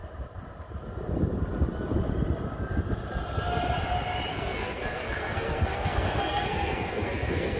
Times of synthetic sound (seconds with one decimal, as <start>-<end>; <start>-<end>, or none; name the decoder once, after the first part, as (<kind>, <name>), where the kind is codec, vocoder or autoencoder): 4.3-7.6 (codec, SNAC)